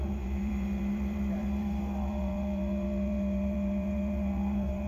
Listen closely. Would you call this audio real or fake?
fake